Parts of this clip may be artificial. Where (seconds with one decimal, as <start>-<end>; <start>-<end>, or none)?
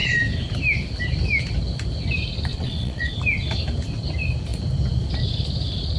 2.5-3.1